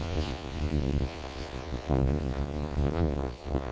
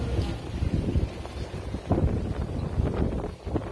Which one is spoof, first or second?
first